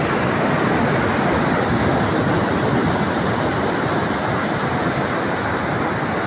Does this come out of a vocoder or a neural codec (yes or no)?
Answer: no